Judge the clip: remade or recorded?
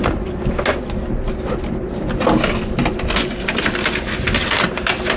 recorded